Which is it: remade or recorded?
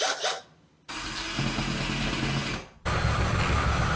recorded